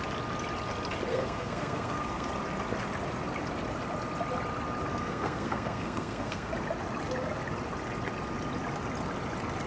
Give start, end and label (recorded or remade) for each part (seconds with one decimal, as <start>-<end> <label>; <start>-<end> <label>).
0.0-1.1 recorded; 1.1-2.3 remade; 2.3-4.9 recorded; 4.9-6.5 remade; 6.5-9.7 recorded